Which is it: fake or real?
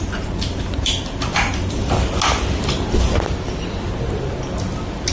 real